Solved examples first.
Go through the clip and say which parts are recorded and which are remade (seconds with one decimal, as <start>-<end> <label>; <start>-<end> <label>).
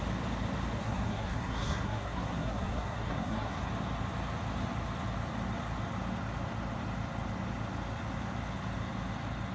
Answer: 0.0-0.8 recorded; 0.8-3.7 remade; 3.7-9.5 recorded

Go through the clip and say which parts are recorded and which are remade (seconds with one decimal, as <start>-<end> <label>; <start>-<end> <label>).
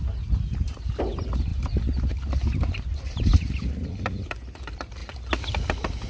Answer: 0.0-6.1 recorded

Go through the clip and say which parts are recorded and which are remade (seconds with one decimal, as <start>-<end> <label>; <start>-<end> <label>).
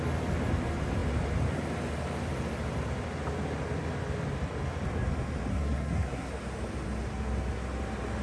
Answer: 0.0-5.5 recorded; 5.5-6.3 remade; 6.3-8.2 recorded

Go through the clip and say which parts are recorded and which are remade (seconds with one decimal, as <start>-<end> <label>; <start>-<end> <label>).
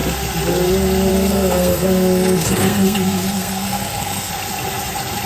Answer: 0.0-1.1 recorded; 1.1-4.3 remade; 4.3-5.3 recorded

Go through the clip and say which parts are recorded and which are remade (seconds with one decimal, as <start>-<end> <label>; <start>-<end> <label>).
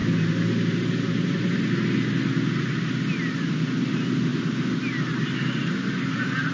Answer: 0.0-6.5 recorded